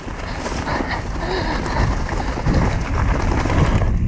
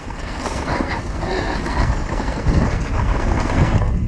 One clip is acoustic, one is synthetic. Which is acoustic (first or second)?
first